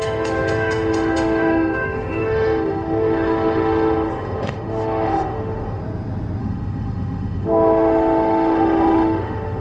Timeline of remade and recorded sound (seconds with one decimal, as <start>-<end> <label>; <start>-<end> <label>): 0.0-5.8 remade; 5.8-6.4 recorded; 6.4-9.6 remade